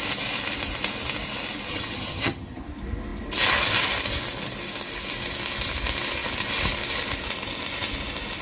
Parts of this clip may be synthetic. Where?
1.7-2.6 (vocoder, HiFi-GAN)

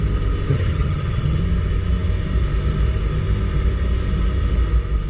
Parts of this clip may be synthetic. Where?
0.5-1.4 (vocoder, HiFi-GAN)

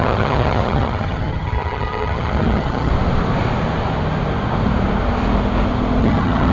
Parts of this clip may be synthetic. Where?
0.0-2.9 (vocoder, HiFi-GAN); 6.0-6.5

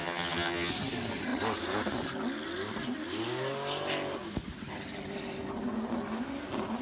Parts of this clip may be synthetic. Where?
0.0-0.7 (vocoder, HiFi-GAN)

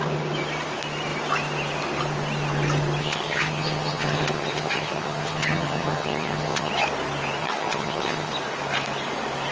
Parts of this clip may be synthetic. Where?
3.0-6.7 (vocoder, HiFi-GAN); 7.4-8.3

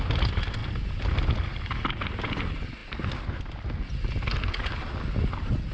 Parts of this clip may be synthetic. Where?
none